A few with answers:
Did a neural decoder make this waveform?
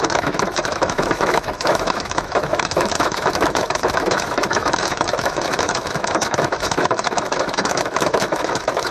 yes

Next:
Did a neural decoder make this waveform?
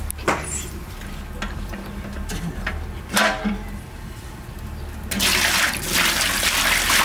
no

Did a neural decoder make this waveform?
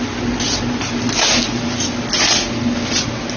no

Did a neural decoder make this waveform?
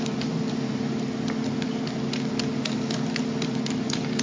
no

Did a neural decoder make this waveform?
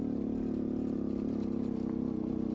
no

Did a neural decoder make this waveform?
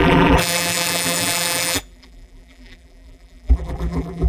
yes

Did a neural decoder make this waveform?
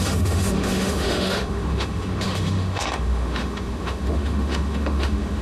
yes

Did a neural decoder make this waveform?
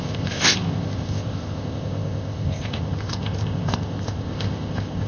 yes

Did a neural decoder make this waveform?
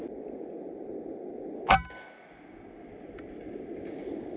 no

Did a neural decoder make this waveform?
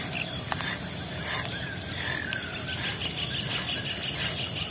no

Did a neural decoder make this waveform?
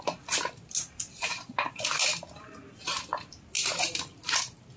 no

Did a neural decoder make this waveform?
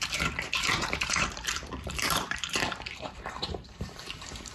yes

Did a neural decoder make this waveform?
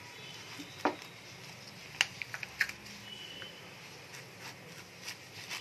no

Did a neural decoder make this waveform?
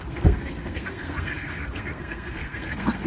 yes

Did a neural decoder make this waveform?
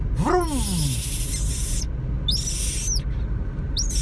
no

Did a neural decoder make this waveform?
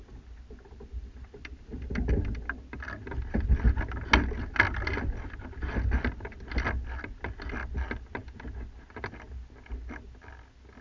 no